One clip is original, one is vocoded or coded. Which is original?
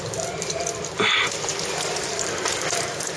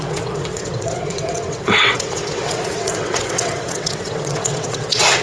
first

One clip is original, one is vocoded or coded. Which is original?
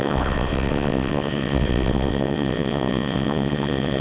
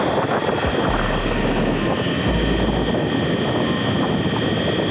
second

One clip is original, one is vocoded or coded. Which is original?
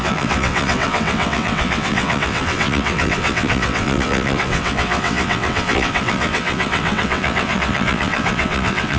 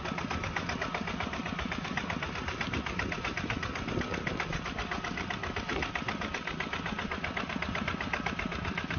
second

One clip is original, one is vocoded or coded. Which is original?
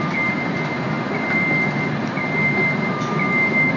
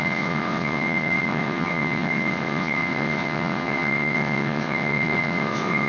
first